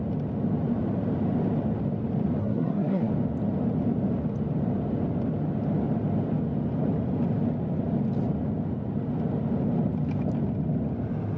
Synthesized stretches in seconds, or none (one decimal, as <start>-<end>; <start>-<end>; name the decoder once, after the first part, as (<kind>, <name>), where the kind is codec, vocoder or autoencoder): 2.4-3.1 (codec, SNAC)